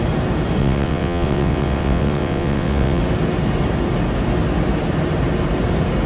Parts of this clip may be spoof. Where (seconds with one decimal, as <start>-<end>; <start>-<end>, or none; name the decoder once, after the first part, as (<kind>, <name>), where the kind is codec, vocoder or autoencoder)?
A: 0.6-3.0 (vocoder, WaveNeXt)